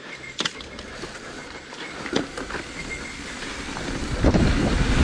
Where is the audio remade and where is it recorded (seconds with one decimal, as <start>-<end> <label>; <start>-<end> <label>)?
0.0-5.0 recorded